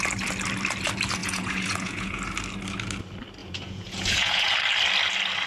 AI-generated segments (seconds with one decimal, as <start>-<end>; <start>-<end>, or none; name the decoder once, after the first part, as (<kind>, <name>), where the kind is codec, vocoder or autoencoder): 1.2-2.2 (vocoder, Vocos); 3.4-4.5